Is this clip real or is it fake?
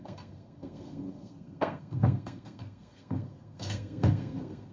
fake